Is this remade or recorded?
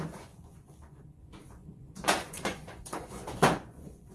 remade